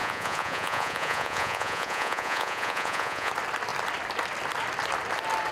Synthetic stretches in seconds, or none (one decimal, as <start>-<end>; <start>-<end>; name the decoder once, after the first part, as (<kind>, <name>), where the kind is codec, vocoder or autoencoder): 0.0-3.3 (vocoder, Vocos)